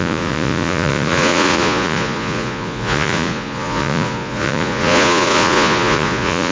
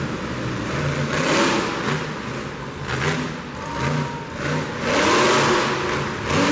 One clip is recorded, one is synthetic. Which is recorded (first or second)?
second